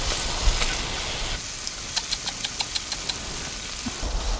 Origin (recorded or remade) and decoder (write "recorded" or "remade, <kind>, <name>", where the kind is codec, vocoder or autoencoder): recorded